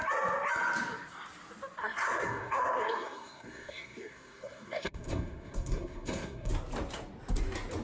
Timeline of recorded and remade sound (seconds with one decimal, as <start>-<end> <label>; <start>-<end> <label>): 0.0-1.8 recorded; 1.8-6.5 remade; 6.5-7.8 recorded

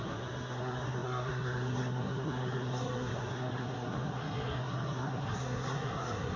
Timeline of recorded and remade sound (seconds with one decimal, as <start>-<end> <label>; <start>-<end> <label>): 0.0-6.4 remade

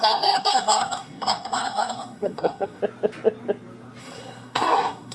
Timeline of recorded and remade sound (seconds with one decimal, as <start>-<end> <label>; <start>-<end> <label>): 0.0-2.8 remade; 2.8-4.0 recorded; 4.0-5.1 remade

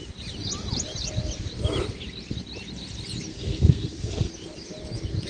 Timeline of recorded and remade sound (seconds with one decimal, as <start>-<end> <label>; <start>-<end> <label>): 0.0-3.3 recorded; 3.3-4.3 remade; 4.3-5.3 recorded

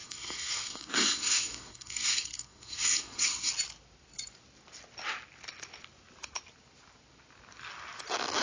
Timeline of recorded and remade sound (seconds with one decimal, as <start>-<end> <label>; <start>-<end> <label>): 0.0-3.5 remade; 3.5-8.4 recorded

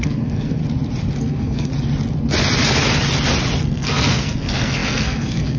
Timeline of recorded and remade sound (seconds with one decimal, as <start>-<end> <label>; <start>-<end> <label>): 0.0-0.6 remade; 0.6-1.2 recorded; 1.2-1.7 remade; 1.7-3.6 recorded; 3.6-5.6 remade